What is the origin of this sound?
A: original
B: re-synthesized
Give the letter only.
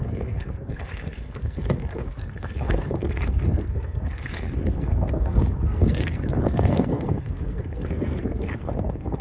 B